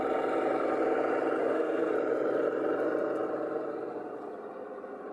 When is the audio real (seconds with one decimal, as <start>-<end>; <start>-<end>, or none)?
0.0-1.4; 1.9-5.1